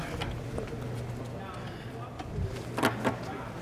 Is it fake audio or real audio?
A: real